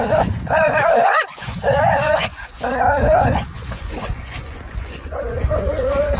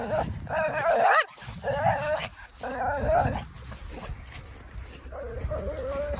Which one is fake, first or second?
first